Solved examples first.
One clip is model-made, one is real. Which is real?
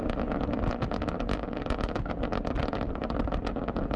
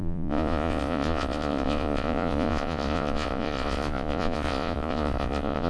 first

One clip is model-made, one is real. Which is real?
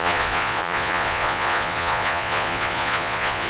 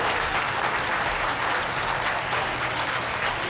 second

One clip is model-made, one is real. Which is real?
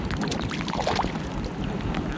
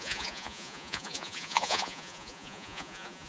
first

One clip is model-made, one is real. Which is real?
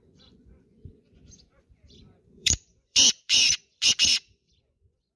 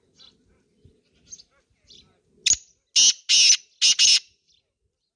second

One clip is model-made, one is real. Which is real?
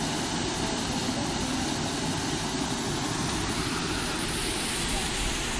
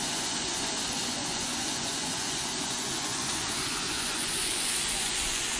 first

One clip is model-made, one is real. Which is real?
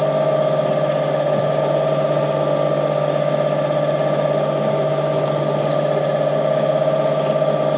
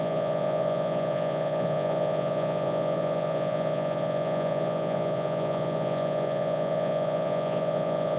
first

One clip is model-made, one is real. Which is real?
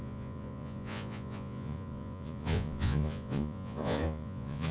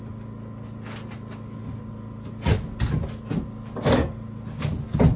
second